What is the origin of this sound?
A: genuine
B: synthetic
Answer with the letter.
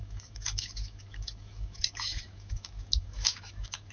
B